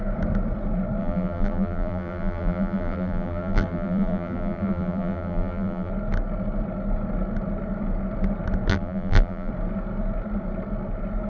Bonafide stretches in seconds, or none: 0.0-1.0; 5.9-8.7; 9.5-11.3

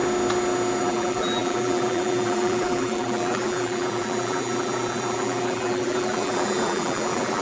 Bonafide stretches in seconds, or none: 0.0-0.8

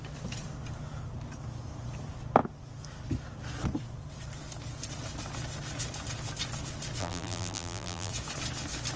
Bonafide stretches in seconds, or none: 0.0-7.0; 8.1-9.0